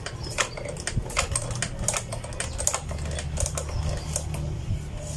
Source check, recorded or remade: recorded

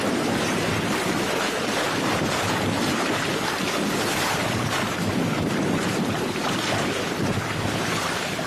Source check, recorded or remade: recorded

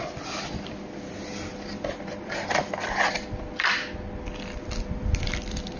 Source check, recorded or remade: recorded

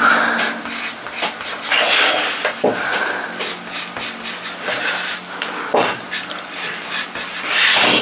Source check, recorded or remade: recorded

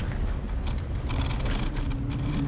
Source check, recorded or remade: recorded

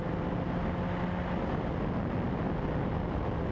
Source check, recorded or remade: recorded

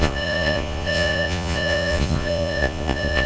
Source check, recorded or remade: remade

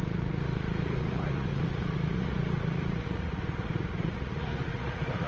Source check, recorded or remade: remade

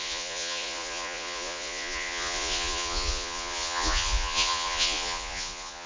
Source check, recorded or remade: remade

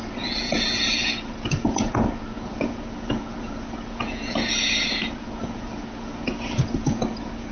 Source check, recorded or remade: remade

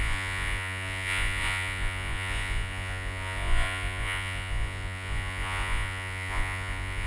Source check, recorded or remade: remade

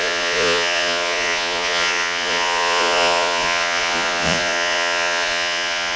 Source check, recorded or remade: remade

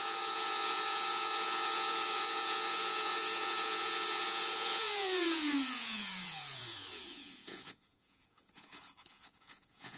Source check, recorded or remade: remade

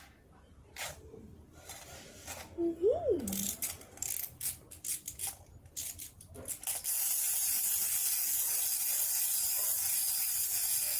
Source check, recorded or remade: recorded